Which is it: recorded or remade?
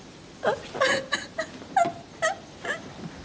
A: recorded